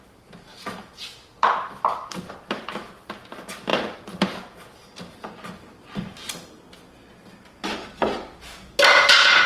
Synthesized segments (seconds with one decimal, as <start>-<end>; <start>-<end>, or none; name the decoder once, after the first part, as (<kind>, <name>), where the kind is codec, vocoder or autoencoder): 0.5-2.3 (vocoder, BigVGAN v2); 3.7-5.3